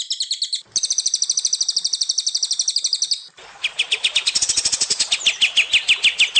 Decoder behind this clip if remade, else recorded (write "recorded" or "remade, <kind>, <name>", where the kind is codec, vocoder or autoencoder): recorded